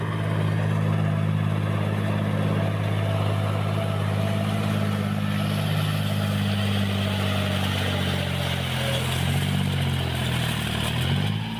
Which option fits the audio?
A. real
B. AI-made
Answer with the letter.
A